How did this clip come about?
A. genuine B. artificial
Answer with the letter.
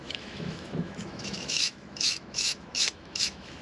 B